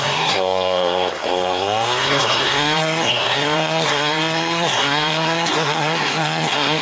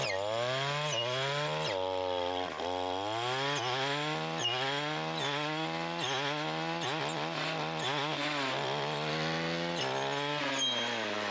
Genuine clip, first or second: second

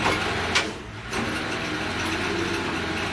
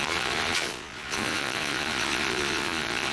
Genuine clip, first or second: first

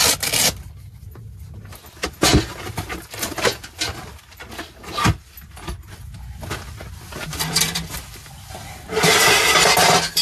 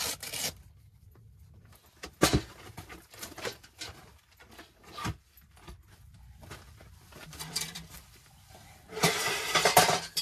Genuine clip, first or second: first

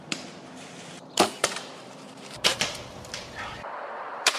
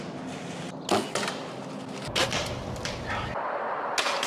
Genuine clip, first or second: second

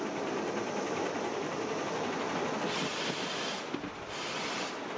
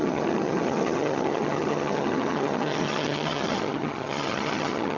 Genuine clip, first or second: first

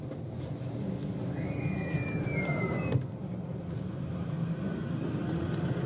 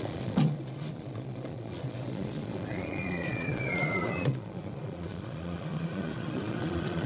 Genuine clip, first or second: first